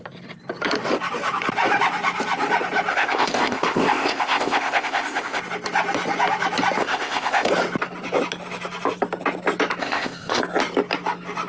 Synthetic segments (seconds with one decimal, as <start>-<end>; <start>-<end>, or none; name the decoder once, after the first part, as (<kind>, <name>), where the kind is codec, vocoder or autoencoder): 2.9-5.4 (codec, ZipCodec); 6.8-7.5; 9.8-10.4